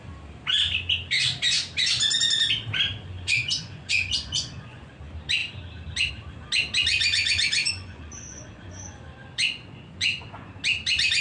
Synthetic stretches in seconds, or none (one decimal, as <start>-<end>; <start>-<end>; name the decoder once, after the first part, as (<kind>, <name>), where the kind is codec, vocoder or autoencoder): 2.9-4.9 (vocoder, Vocos); 6.9-10.5